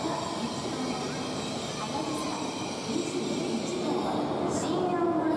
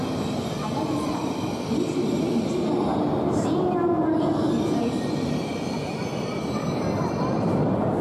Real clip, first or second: first